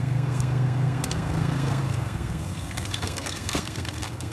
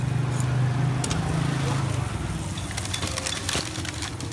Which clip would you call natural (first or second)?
second